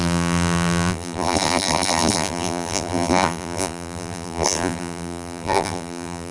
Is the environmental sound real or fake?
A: fake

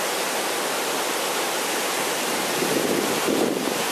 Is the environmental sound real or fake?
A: real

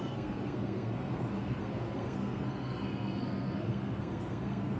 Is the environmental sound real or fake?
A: fake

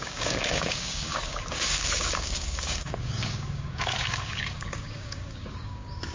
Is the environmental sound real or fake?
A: fake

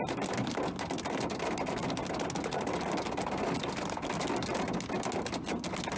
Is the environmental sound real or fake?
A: real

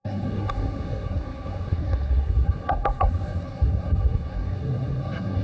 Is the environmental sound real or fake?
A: fake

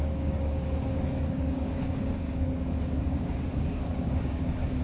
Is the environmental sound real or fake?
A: fake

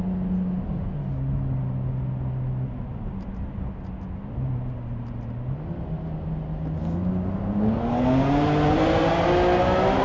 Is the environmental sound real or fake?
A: real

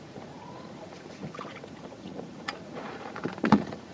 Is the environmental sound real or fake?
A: fake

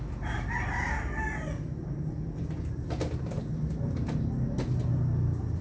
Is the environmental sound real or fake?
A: real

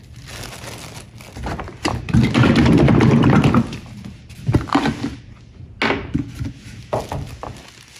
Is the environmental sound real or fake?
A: real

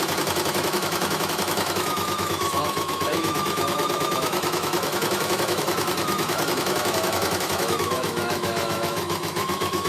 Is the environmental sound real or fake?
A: fake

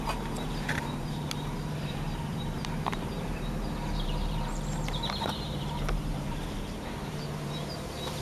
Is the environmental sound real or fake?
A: fake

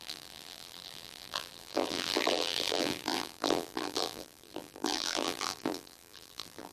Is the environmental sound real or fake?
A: fake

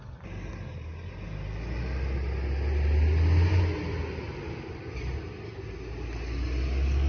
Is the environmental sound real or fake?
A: real